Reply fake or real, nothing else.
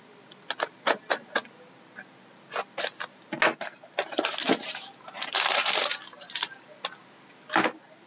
real